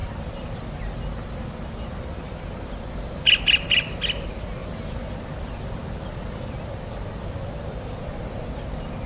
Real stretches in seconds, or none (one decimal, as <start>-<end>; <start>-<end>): 0.6-4.6; 8.0-9.1